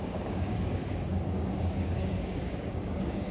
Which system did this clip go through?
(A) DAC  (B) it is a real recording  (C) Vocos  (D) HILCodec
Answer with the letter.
A